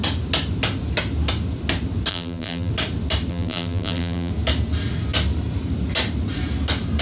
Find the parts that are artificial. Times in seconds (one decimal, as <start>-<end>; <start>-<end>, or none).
2.1-2.7; 3.3-4.3

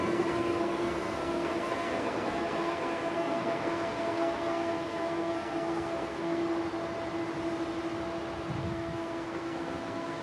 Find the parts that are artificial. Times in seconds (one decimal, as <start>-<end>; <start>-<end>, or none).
0.0-6.4; 8.6-10.2